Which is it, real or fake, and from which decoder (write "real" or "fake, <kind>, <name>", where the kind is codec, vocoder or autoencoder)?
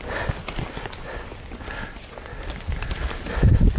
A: real